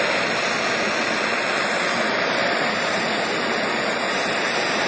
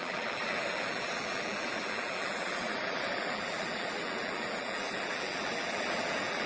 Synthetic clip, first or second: second